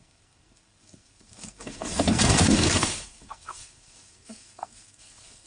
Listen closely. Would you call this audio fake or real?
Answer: fake